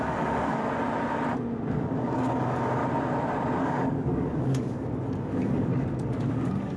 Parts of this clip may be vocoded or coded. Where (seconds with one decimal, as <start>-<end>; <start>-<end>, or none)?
0.0-0.6; 1.7-2.8; 3.6-6.8